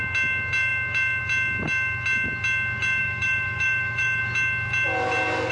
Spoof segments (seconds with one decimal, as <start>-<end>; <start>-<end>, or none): 3.0-4.2